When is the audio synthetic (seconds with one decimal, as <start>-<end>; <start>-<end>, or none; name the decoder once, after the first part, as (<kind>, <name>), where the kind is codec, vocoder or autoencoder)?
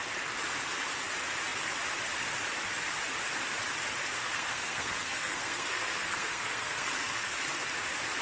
4.2-7.4 (codec, SNAC)